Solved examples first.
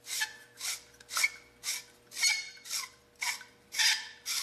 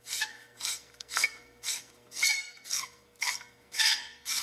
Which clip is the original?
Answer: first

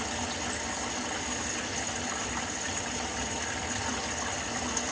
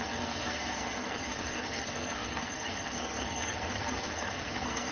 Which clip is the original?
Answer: first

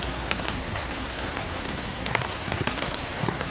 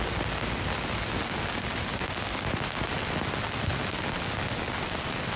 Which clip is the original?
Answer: second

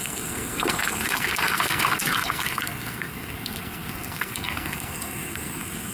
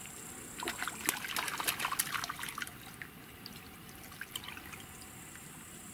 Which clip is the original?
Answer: second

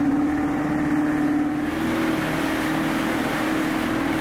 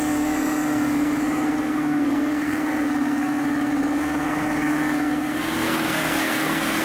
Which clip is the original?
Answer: first